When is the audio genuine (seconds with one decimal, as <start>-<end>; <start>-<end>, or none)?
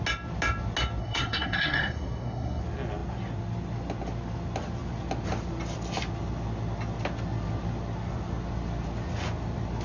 0.0-1.0; 2.6-9.8